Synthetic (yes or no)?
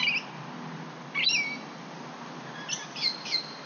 no